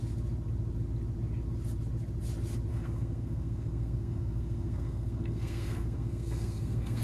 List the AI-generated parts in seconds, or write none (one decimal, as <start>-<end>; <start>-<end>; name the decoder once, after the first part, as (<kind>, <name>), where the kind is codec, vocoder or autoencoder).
2.7-7.0 (codec, SNAC)